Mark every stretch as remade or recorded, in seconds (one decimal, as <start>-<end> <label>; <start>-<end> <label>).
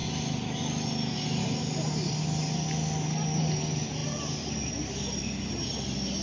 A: 0.0-6.2 recorded